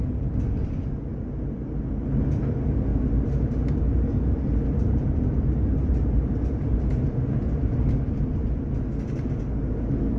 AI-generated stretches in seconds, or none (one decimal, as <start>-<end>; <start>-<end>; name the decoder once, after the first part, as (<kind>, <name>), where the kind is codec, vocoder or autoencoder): 2.9-7.8 (vocoder, BigVGAN v2)